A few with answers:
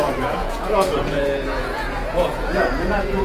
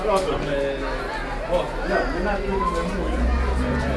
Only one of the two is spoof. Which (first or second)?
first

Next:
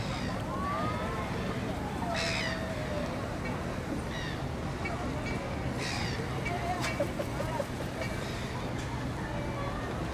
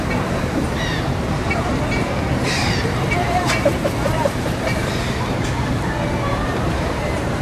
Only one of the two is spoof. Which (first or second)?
second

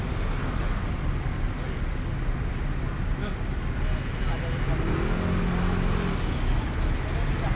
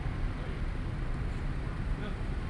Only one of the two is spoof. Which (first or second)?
second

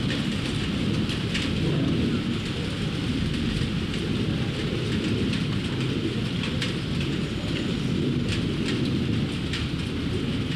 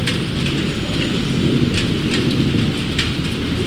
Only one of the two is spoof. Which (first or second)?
first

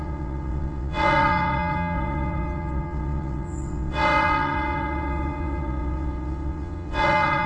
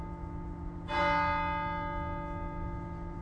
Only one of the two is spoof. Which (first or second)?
first